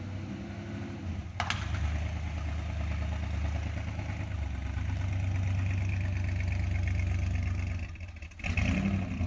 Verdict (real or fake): real